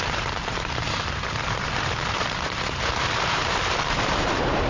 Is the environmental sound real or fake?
fake